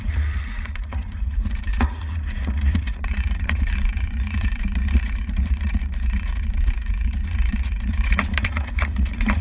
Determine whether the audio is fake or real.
fake